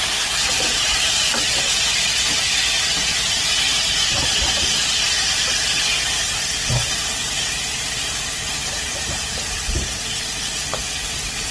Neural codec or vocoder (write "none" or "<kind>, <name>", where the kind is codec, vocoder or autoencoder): none